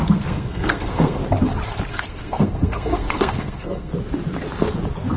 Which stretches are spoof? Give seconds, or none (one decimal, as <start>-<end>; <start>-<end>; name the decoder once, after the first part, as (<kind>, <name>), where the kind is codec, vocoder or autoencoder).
0.0-1.2 (codec, SNAC); 1.9-3.9

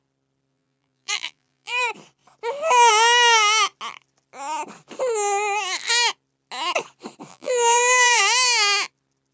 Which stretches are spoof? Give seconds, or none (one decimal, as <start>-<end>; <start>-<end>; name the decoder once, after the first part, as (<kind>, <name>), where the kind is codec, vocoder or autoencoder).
0.5-1.8 (vocoder, BigVGAN v2); 7.3-8.2

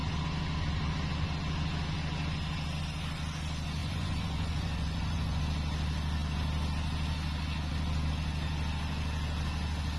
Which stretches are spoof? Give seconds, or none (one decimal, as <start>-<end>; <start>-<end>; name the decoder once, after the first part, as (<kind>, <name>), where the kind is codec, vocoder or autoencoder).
3.8-5.4 (vocoder, Vocos)

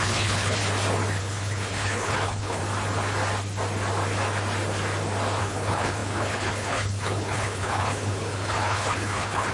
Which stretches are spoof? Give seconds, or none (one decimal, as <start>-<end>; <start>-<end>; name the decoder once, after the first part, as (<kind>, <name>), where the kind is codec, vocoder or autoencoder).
0.0-0.6 (codec, HILCodec); 1.2-2.6; 5.4-9.5

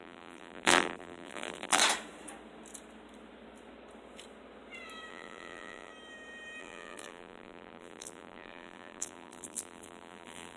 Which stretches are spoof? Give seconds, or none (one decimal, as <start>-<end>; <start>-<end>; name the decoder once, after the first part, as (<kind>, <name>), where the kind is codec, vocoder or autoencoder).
0.0-1.8 (vocoder, BigVGAN v2); 5.1-5.9; 6.6-10.6

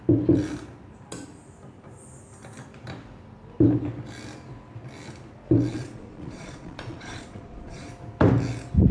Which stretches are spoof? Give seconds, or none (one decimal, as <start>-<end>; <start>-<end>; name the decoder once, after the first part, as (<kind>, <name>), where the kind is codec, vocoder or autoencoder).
5.7-7.9 (vocoder, Vocos)